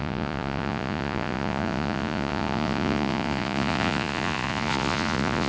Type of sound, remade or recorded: remade